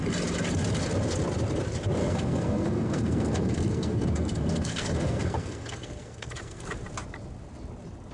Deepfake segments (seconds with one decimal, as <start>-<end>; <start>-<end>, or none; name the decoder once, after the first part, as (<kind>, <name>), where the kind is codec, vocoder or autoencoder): 2.0-6.7 (codec, SNAC)

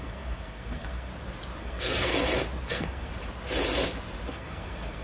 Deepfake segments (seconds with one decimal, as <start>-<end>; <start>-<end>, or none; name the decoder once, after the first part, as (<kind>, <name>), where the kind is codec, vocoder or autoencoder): 0.0-1.1 (codec, SNAC); 1.6-2.1; 2.7-3.1; 4.3-5.0

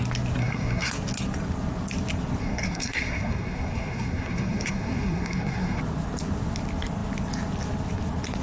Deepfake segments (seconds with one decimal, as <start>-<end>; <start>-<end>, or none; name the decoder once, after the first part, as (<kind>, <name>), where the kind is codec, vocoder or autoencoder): 0.4-0.9 (codec, SNAC); 2.4-5.8

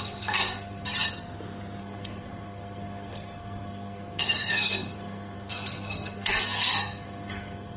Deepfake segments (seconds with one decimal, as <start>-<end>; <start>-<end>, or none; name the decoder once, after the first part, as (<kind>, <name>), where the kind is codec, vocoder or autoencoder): 0.0-0.9 (codec, SNAC); 1.8-7.8

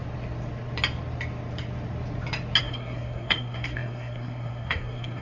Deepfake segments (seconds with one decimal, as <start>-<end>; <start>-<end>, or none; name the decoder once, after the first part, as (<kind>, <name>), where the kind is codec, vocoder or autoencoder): 2.6-5.2 (codec, SNAC)

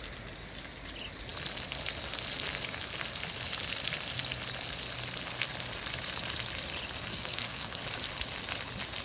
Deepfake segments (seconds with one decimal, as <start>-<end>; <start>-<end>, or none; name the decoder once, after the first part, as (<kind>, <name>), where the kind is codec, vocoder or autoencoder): 7.1-7.8 (codec, SNAC)